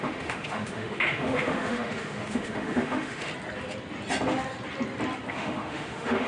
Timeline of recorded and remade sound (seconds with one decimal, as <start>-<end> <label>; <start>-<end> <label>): 0.0-3.3 remade; 3.3-5.3 recorded; 5.3-6.3 remade